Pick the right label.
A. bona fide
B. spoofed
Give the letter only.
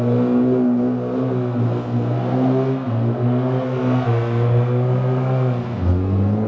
B